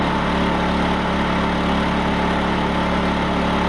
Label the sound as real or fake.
real